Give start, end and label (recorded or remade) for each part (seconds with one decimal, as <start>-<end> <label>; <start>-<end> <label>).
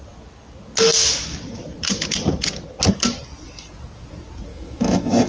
0.0-4.5 recorded; 4.5-5.3 remade